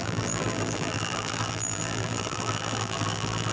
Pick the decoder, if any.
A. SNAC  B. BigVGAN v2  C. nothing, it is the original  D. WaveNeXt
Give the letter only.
B